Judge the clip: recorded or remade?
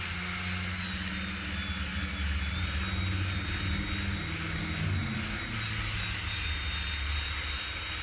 recorded